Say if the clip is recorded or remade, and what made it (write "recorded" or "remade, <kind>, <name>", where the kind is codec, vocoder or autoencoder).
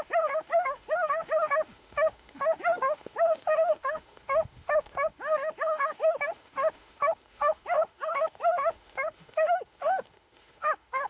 remade, autoencoder, DAC-VAE